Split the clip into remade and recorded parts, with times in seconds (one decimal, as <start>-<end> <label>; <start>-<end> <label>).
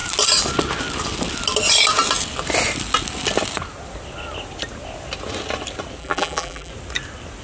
0.0-6.0 recorded; 6.0-6.7 remade; 6.7-7.4 recorded